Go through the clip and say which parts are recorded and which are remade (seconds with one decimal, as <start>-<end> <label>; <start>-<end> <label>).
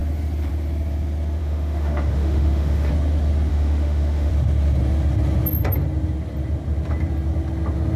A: 0.0-1.4 recorded; 1.4-2.9 remade; 2.9-3.5 recorded; 3.5-4.3 remade; 4.3-8.0 recorded